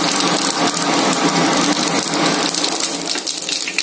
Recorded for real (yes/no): yes